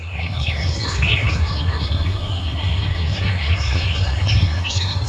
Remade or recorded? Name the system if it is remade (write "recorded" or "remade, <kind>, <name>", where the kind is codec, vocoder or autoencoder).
remade, codec, SNAC